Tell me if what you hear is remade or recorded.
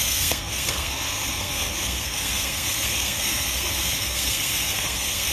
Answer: remade